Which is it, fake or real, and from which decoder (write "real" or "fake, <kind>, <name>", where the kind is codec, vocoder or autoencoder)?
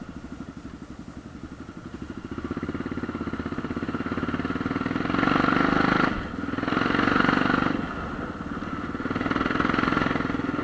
real